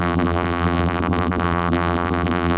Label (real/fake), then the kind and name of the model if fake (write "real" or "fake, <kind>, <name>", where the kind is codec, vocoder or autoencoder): fake, vocoder, BigVGAN v2